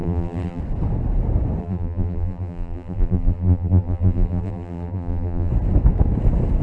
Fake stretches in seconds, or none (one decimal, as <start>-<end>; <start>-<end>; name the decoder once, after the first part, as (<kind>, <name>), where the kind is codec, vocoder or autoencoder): 0.0-0.6 (vocoder, BigVGAN v2); 1.6-5.5